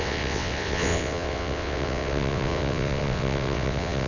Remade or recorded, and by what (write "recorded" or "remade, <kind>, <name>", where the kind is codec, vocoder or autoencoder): remade, vocoder, WaveNeXt